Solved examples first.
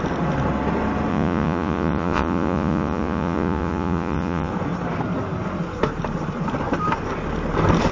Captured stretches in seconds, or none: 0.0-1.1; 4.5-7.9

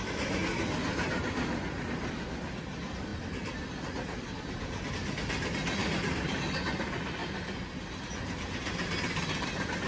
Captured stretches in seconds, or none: 0.0-9.9

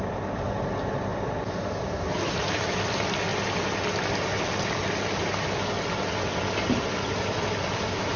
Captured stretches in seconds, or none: 0.0-8.2

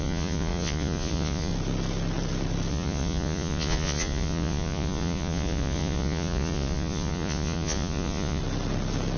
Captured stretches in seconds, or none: 1.5-2.7; 8.4-9.2

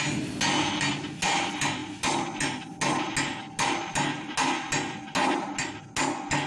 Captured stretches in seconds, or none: 0.0-6.5

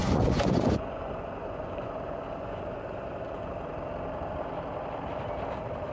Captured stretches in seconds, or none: 3.5-5.9

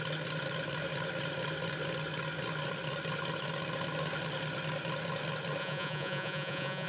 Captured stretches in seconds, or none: 0.0-5.6

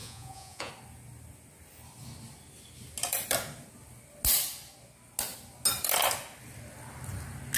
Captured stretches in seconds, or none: 0.7-7.6